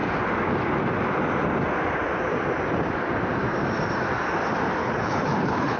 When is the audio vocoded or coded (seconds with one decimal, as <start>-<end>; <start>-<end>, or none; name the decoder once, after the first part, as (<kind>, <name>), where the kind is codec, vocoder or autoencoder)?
4.8-5.8 (codec, HILCodec)

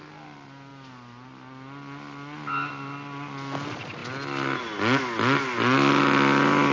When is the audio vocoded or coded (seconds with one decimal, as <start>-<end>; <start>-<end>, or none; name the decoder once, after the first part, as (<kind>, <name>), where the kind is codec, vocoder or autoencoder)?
none

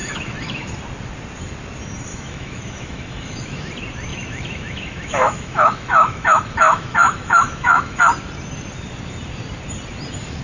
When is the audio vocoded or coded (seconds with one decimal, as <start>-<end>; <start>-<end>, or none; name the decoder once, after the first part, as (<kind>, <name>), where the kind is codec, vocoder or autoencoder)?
0.0-0.7 (autoencoder, DAC-VAE); 2.1-3.6; 4.1-8.0

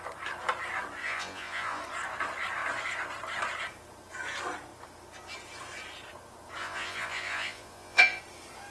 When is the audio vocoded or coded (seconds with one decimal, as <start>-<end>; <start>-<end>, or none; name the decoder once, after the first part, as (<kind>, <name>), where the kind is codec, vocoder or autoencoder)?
1.0-1.8 (vocoder, Vocos); 6.6-8.2

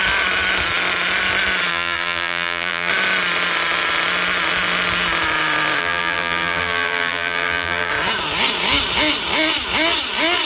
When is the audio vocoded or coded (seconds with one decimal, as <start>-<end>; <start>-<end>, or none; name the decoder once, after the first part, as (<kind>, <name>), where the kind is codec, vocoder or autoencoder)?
1.7-2.9 (vocoder, BigVGAN v2); 5.8-7.9

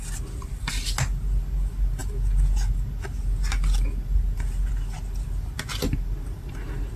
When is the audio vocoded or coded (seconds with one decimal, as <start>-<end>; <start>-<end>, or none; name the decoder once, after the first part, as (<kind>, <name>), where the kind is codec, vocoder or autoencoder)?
none